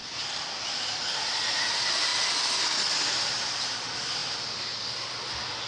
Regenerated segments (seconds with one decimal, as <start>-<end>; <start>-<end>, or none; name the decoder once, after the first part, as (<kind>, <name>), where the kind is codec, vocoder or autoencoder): none